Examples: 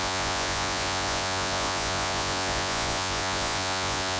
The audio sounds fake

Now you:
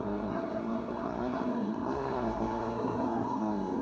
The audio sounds fake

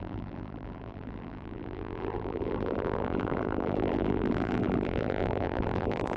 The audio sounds fake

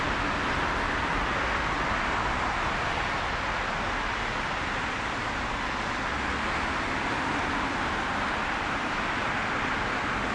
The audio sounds real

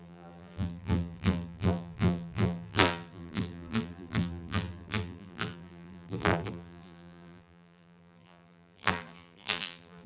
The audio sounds fake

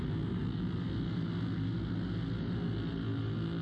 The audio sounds real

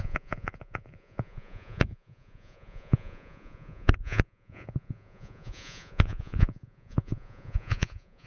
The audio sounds fake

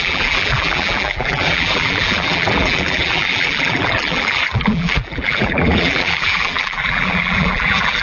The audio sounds fake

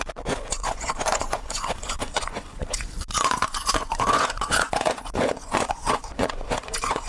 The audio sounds fake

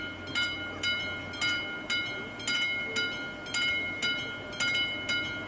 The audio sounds real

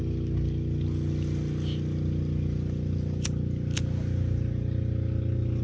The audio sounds real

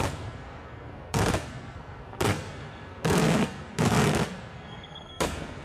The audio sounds fake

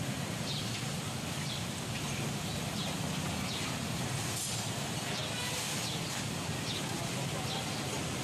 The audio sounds real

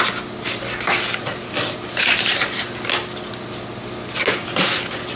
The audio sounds real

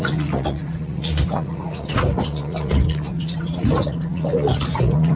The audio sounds fake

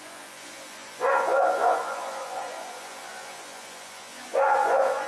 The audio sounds fake